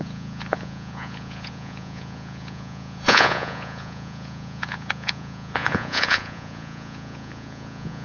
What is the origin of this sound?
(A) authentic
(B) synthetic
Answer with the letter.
B